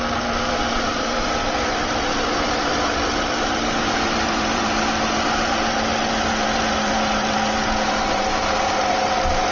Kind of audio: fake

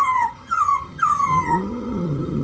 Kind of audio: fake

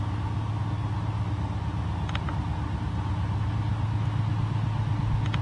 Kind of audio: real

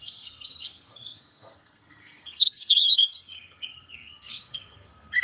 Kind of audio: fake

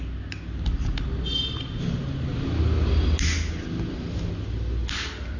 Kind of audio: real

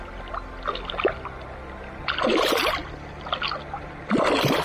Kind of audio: real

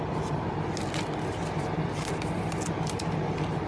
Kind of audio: real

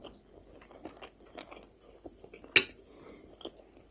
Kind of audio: real